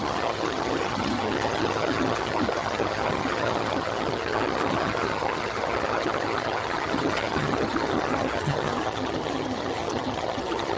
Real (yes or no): no